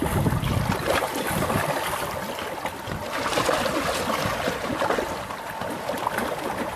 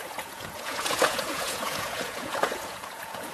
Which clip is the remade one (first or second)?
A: second